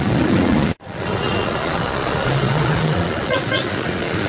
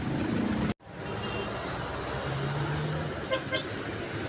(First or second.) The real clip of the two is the second